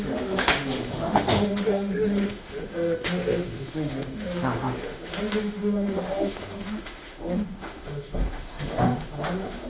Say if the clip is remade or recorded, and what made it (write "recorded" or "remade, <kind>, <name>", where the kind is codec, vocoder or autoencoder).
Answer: remade, autoencoder, DAC-VAE